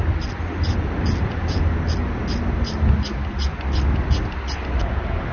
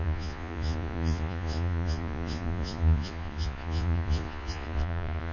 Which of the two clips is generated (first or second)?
second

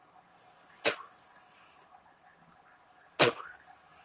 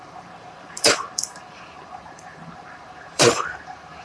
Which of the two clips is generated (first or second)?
second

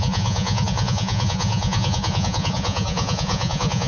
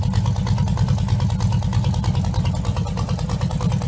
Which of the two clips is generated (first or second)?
first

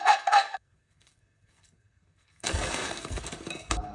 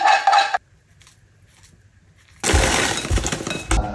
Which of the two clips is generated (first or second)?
first